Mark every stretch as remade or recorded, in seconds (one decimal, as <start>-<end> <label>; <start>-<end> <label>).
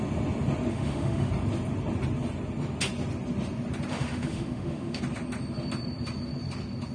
0.0-0.7 recorded; 0.7-1.3 remade; 1.3-3.9 recorded; 3.9-5.0 remade; 5.0-6.9 recorded